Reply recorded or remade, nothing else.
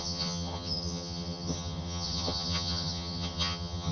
remade